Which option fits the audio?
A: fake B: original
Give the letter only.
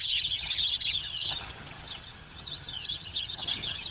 A